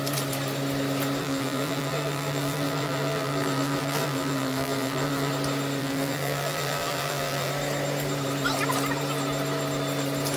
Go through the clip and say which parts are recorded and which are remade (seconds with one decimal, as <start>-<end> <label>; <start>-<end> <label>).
0.0-1.2 recorded; 1.2-5.3 remade; 5.3-5.8 recorded; 5.8-7.5 remade; 7.5-10.4 recorded